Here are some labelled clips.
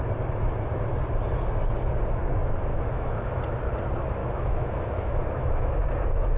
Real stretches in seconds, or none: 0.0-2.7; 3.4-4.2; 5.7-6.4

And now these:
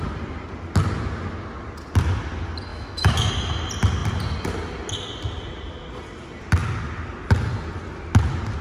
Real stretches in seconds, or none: 0.0-2.7; 3.3-8.6

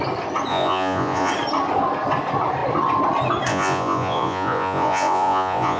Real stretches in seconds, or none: 0.0-0.5; 1.3-3.5

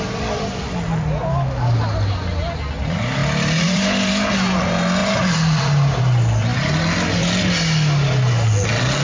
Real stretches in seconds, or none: 0.0-3.2; 3.8-5.0; 6.0-9.0

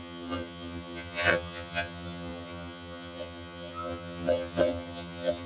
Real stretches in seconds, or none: none

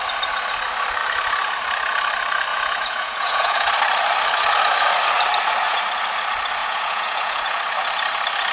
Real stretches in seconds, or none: 0.0-2.5; 3.7-6.6; 7.6-8.5

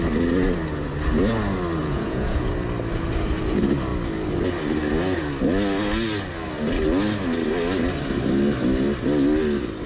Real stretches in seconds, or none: 0.0-1.8; 2.5-9.9

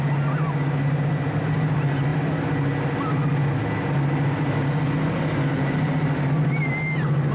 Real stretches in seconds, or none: 0.0-7.3